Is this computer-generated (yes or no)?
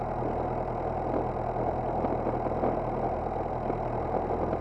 no